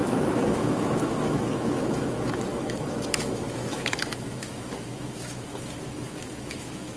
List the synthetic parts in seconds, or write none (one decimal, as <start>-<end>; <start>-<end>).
0.0-7.0